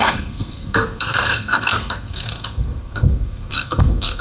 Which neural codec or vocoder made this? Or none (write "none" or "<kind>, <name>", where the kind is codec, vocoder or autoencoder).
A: codec, SNAC